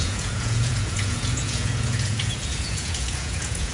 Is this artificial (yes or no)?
yes